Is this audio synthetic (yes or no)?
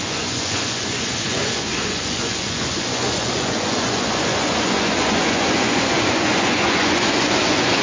yes